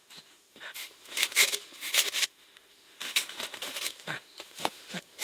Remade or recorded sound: remade